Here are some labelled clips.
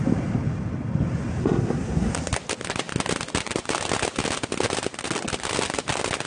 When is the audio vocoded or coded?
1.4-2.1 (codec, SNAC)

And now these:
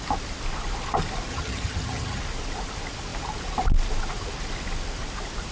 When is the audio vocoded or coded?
1.3-2.2 (vocoder, HiFi-GAN)

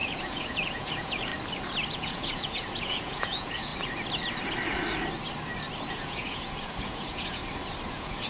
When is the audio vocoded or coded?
0.0-1.3 (vocoder, Vocos); 1.9-3.7; 5.9-7.4; 7.9-8.3

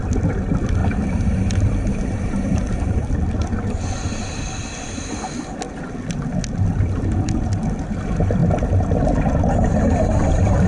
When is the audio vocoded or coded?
0.8-2.6 (vocoder, BigVGAN v2)

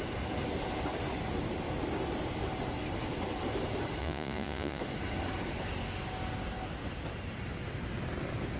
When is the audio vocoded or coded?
4.0-4.8 (vocoder, Vocos)

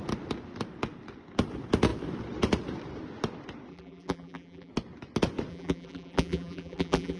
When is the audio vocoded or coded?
3.7-4.7 (vocoder, BigVGAN v2); 5.5-7.2

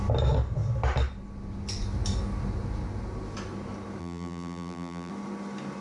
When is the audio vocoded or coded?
4.0-5.1 (vocoder, BigVGAN v2)

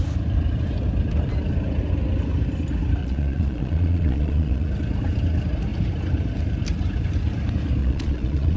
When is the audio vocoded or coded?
3.0-4.7 (vocoder, Vocos); 7.8-8.6